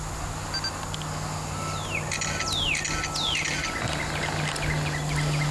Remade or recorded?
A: recorded